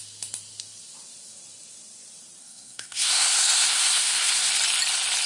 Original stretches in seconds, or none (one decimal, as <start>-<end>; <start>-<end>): 0.0-2.4; 4.5-5.3